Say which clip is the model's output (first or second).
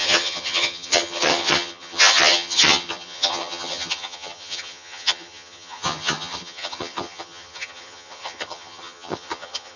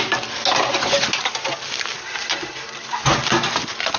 first